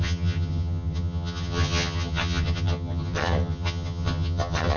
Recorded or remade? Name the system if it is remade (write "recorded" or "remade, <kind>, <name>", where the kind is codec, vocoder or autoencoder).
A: remade, vocoder, HiFi-GAN